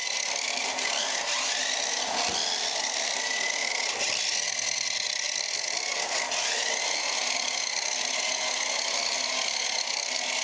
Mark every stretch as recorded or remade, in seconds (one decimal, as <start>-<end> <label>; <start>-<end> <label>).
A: 0.0-10.4 recorded